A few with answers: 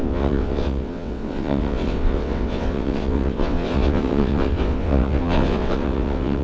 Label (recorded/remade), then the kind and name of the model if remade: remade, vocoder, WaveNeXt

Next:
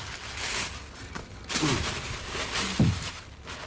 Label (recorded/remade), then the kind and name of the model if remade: recorded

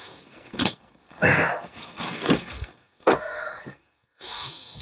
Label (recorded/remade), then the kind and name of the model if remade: remade, codec, SNAC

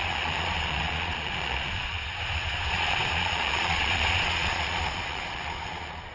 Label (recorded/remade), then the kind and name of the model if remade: remade, vocoder, Vocos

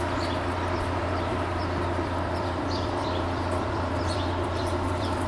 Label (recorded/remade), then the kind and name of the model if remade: remade, vocoder, BigVGAN v2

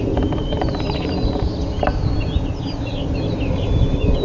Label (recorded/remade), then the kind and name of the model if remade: recorded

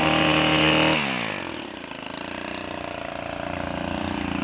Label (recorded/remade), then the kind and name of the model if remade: recorded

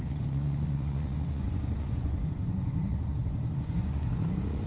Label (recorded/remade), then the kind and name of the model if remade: remade, vocoder, Vocos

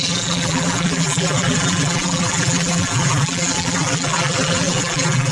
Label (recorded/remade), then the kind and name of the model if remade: remade, vocoder, BigVGAN v2